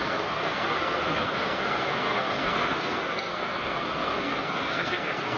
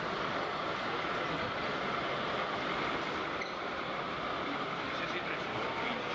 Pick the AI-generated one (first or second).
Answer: first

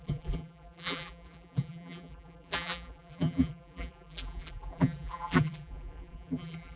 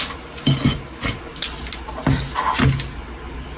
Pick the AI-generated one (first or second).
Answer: first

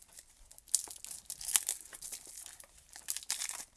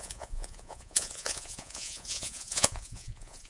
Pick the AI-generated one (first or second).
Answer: second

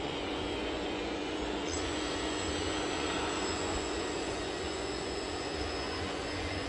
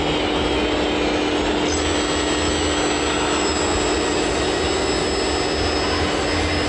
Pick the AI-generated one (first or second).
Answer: first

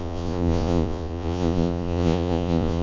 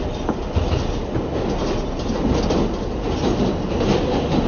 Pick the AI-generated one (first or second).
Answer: first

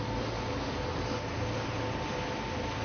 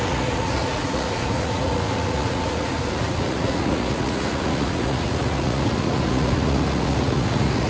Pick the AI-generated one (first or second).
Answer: second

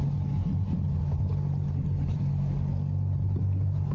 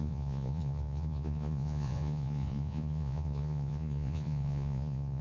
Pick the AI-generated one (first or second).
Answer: second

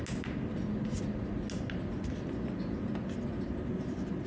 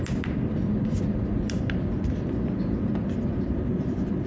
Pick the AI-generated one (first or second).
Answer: second